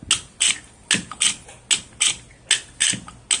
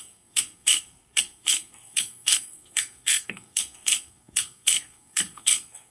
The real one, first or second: first